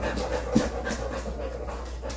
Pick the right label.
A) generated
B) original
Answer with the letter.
B